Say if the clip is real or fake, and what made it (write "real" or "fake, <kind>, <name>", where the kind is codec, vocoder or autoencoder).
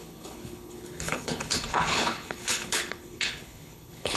fake, codec, HILCodec